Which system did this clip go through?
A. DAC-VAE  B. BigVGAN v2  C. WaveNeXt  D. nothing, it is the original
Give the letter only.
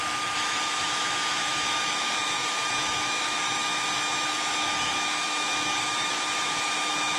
A